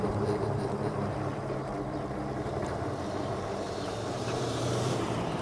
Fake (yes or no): yes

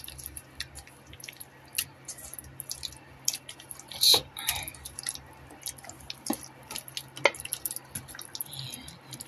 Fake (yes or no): no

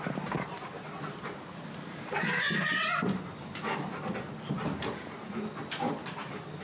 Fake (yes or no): no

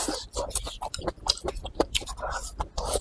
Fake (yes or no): yes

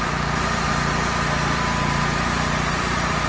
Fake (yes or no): yes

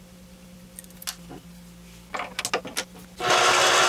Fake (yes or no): no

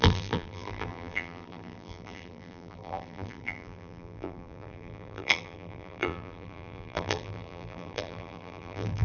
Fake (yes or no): yes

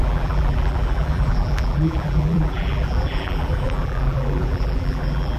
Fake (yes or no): yes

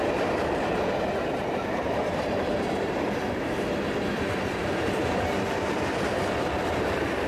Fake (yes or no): yes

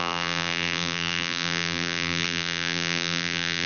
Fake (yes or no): yes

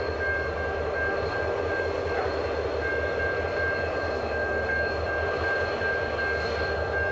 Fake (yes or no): no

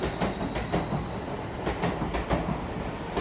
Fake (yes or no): no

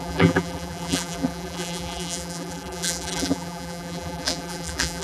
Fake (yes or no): yes